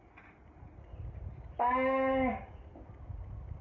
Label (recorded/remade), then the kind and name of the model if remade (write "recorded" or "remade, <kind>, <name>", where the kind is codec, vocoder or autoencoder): recorded